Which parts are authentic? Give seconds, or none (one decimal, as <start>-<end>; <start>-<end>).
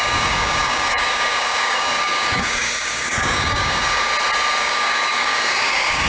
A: 4.1-4.6